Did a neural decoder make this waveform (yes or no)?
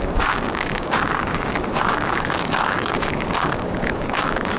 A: yes